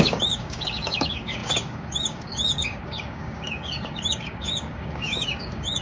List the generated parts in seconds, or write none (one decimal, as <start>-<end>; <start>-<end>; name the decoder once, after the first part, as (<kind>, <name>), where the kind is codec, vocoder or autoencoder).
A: 0.0-5.8 (codec, DAC)